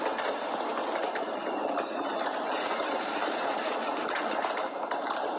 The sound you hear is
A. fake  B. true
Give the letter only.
A